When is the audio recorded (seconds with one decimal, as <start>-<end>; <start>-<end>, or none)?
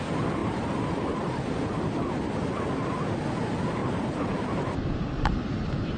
0.0-0.4; 1.6-3.8